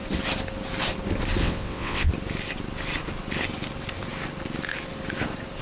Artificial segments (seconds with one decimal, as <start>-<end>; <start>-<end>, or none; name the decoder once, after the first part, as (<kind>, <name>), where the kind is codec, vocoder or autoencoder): 1.4-2.1 (vocoder, WaveNeXt)